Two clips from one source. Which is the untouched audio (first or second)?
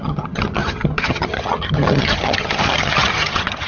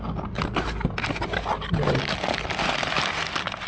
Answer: second